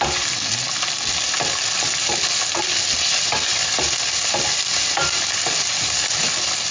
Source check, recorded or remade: recorded